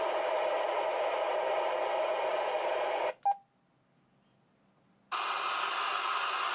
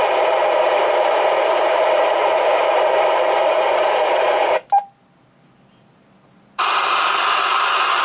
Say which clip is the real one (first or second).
first